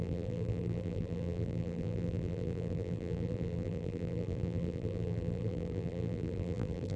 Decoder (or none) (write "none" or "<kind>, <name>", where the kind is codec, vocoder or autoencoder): vocoder, BigVGAN v2